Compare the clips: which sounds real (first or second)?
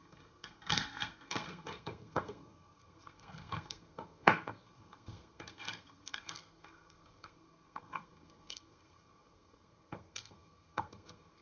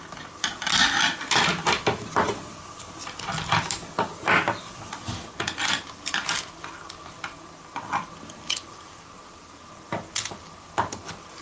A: second